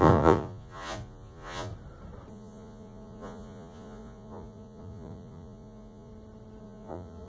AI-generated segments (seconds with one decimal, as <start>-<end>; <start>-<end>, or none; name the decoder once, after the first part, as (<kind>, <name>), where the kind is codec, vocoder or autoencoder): 0.0-1.7 (vocoder, Vocos); 2.3-6.1; 6.6-7.3